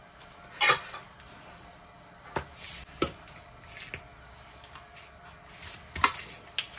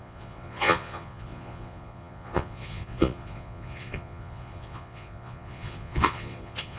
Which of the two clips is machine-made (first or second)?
second